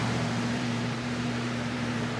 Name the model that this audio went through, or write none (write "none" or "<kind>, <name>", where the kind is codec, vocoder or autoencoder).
vocoder, BigVGAN v2